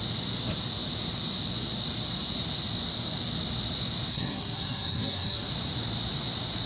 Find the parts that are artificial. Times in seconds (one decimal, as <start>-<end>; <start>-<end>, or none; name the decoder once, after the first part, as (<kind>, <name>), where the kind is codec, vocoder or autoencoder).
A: 4.1-5.5 (codec, SNAC)